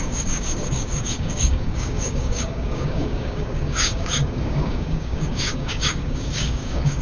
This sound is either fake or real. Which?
fake